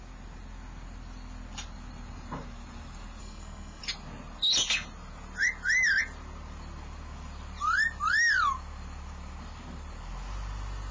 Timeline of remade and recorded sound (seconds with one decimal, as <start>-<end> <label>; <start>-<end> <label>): 0.0-3.2 recorded; 3.2-3.8 remade; 3.8-10.9 recorded